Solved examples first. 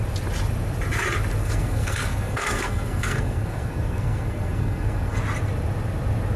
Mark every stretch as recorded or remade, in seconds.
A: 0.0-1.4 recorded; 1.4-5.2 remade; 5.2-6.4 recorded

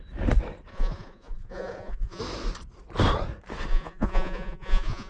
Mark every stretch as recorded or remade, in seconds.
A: 0.0-0.7 recorded; 0.7-2.2 remade; 2.2-3.7 recorded; 3.7-5.1 remade

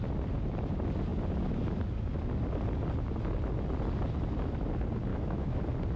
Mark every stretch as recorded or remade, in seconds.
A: 0.0-5.1 recorded; 5.1-5.6 remade; 5.6-6.0 recorded